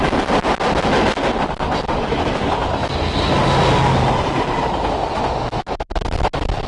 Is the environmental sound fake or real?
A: real